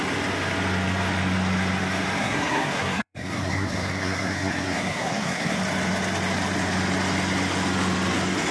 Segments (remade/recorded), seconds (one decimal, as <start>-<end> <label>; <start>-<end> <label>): 0.0-2.2 recorded; 2.2-5.6 remade; 5.6-8.5 recorded

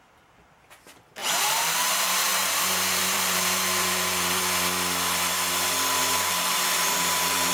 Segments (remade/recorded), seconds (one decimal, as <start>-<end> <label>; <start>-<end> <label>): 0.0-1.2 recorded; 1.2-4.4 remade; 4.4-6.0 recorded; 6.0-7.5 remade

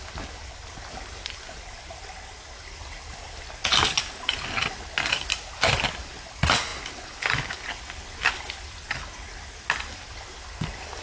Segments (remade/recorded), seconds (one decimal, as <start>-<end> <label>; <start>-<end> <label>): 0.0-11.0 recorded

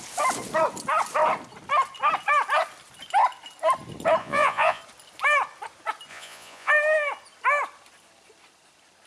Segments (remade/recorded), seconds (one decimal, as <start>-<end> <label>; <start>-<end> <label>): 0.0-4.2 recorded; 4.2-4.8 remade; 4.8-6.1 recorded; 6.1-6.7 remade; 6.7-9.1 recorded